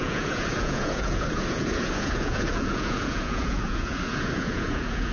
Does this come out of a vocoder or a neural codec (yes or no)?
yes